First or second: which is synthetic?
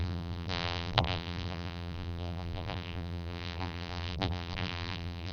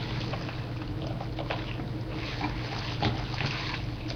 first